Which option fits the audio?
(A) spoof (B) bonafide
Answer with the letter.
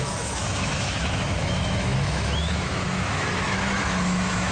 A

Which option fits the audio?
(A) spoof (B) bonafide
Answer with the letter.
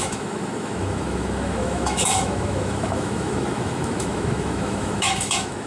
A